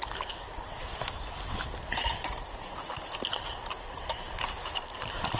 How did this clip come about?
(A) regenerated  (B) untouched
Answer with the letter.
B